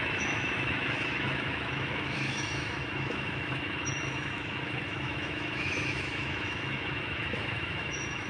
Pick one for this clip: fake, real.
fake